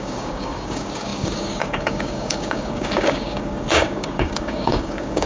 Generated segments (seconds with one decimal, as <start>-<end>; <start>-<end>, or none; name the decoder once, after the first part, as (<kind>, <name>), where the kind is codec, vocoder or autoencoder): 0.0-5.3 (codec, DAC)